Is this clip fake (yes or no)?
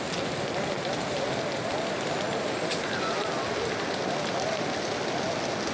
no